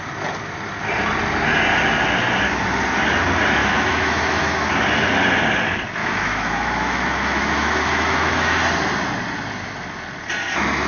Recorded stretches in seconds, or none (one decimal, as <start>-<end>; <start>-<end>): 0.0-3.6; 4.6-6.0; 8.6-10.9